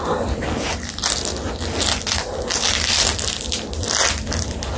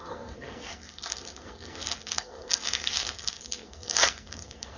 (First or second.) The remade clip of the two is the second